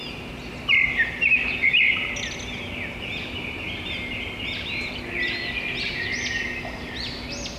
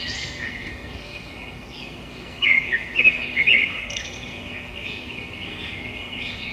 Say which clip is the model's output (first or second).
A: second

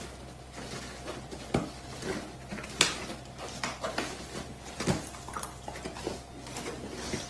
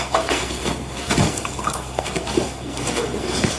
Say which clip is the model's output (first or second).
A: second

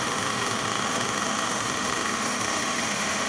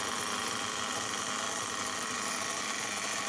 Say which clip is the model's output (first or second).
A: first